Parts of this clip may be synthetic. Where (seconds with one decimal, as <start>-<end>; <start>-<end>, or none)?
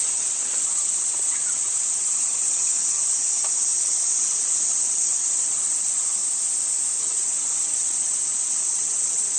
0.0-6.2; 7.0-9.4